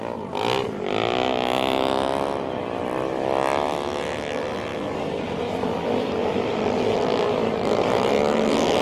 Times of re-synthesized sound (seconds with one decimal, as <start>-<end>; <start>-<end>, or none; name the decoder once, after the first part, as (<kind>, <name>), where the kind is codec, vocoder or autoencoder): 0.0-4.7 (vocoder, BigVGAN v2); 5.2-8.8